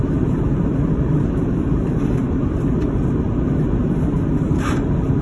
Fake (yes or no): yes